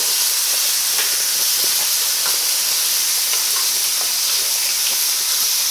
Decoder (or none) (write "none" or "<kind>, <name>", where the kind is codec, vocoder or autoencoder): none